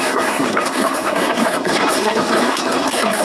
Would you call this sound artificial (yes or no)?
yes